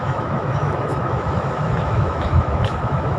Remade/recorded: remade